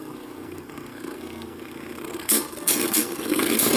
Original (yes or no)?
no